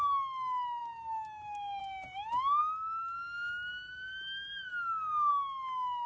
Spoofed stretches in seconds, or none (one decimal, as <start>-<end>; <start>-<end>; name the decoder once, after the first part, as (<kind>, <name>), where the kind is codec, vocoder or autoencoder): none